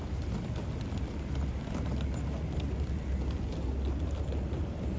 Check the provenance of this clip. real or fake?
real